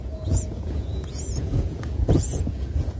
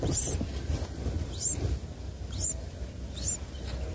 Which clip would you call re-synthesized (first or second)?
first